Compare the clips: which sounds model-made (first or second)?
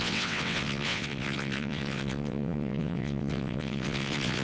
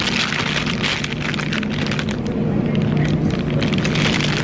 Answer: first